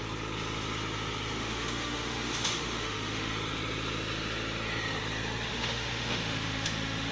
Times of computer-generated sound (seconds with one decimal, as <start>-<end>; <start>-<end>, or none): 1.4-3.3; 5.5-7.1